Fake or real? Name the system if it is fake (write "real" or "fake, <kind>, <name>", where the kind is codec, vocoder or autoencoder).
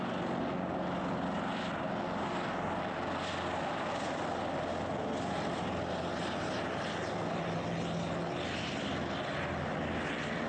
real